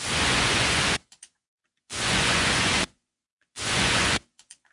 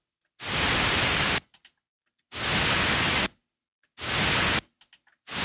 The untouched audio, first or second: second